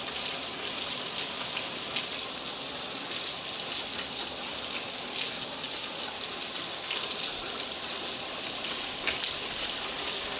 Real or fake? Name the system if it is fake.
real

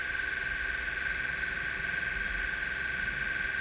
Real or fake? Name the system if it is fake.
real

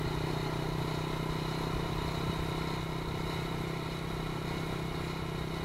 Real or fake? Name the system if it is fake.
real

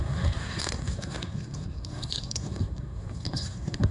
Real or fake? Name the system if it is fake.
fake, codec, SNAC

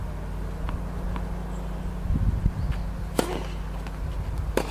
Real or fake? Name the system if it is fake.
real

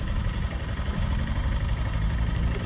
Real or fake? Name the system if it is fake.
real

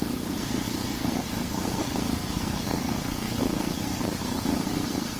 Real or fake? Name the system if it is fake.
fake, codec, SNAC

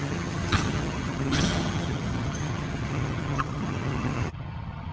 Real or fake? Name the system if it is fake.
fake, vocoder, HiFi-GAN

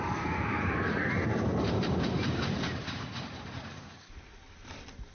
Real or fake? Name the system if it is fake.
fake, vocoder, BigVGAN v2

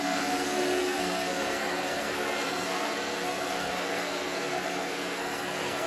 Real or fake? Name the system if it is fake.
fake, codec, SNAC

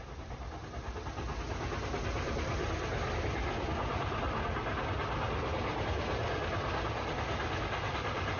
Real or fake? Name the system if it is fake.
real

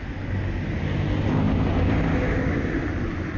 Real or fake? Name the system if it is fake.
real